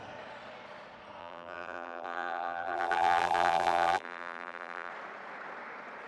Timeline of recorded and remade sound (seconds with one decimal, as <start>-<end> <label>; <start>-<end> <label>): 0.0-1.2 recorded; 1.2-4.9 remade; 4.9-6.1 recorded